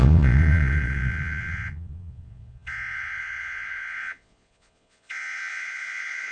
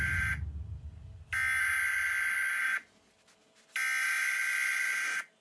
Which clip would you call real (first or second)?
second